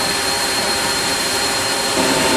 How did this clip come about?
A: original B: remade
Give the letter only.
B